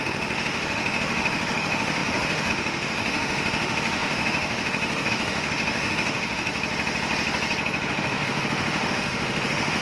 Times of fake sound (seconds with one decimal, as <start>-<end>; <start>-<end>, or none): 0.0-6.5; 7.9-9.8